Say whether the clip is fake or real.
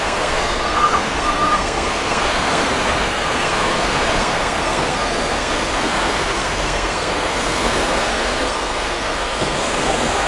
fake